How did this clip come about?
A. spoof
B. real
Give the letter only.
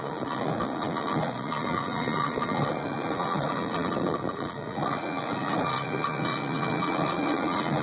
A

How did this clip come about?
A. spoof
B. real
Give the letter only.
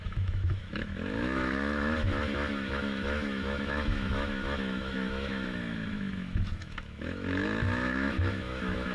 A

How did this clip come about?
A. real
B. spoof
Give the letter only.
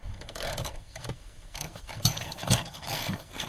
B